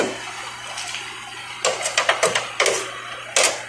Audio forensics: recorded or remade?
recorded